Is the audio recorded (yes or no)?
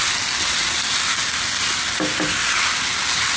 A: yes